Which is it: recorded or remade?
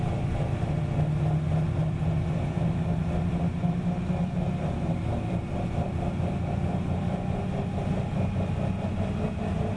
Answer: recorded